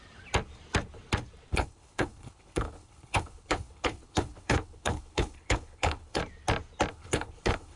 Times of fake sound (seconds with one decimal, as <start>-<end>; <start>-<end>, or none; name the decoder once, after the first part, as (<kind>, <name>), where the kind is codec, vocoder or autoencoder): 1.5-6.2 (codec, HILCodec); 6.9-7.8